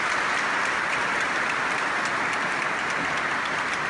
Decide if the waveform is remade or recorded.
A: recorded